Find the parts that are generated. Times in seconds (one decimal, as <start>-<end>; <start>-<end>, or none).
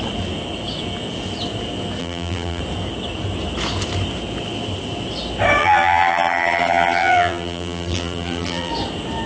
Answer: 2.0-2.6; 5.6-8.7